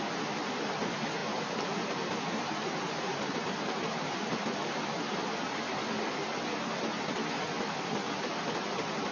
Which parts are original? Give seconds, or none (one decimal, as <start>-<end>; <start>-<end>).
0.0-1.2; 5.3-9.1